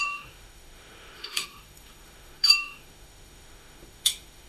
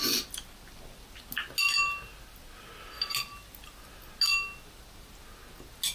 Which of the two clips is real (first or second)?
second